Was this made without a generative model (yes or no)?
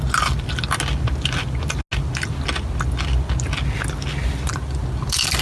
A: yes